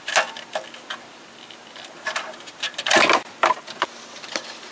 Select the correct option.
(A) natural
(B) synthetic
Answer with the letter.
A